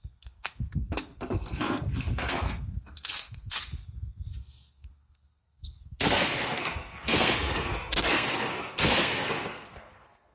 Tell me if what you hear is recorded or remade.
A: remade